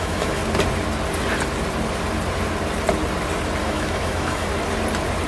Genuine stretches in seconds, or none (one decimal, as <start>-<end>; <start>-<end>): 0.4-3.6; 4.5-5.3